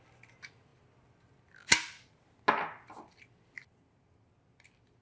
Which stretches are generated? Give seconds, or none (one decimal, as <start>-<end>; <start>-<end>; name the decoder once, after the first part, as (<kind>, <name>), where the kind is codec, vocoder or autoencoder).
none